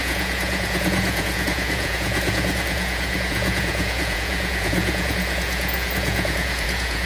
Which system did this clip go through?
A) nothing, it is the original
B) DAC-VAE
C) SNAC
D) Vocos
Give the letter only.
D